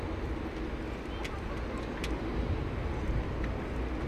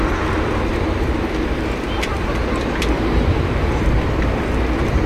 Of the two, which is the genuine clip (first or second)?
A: first